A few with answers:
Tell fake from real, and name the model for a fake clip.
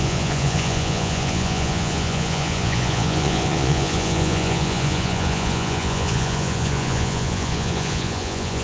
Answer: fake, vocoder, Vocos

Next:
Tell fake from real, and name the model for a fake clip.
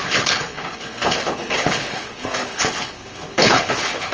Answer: fake, codec, HILCodec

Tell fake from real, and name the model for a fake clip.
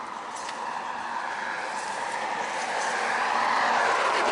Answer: real